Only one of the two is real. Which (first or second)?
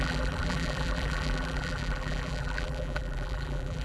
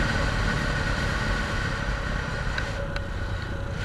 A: second